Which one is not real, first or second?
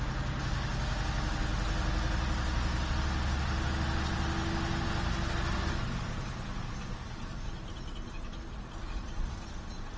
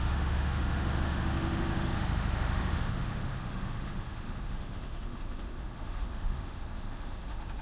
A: second